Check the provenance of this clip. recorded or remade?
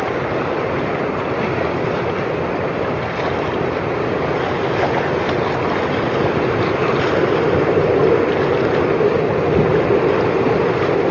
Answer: recorded